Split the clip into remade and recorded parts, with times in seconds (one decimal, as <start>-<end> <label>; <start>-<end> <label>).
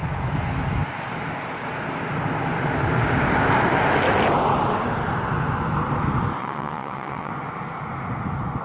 0.0-6.4 recorded; 6.4-7.3 remade; 7.3-8.6 recorded